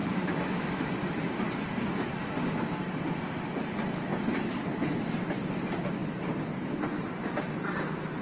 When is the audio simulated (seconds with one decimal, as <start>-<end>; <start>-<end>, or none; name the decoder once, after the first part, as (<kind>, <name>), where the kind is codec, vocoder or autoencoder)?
0.0-0.9 (autoencoder, DAC-VAE)